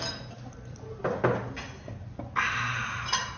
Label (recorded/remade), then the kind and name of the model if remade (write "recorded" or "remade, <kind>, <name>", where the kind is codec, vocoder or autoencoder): recorded